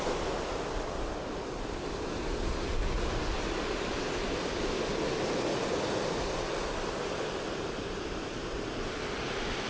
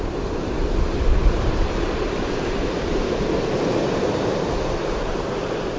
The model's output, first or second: second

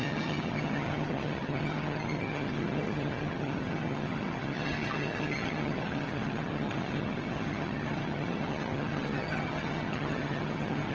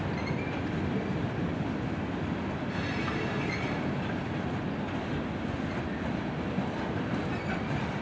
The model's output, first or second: first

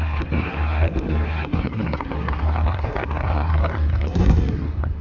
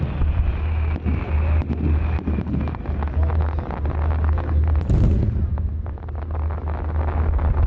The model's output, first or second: first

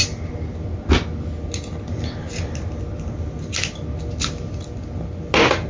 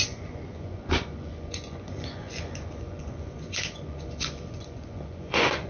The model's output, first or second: second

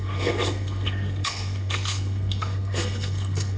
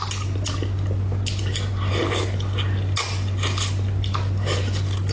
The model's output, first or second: first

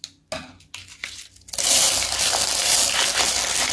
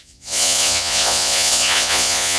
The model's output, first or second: second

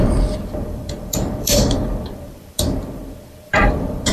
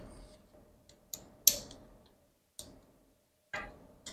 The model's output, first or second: first